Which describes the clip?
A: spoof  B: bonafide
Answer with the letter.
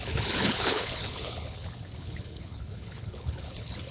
A